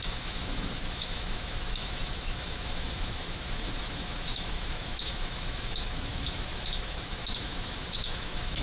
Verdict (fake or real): fake